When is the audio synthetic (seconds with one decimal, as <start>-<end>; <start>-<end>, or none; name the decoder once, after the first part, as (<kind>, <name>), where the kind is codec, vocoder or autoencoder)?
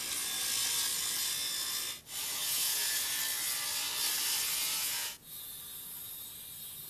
2.2-3.2 (vocoder, Vocos); 4.7-5.6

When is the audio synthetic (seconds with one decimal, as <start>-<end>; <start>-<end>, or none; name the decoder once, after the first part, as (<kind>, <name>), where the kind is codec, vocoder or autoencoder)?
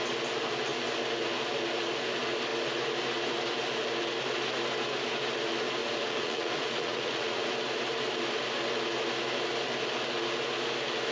5.8-7.5 (vocoder, Vocos)